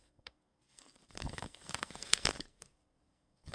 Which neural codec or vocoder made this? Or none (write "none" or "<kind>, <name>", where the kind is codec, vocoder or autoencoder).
codec, SNAC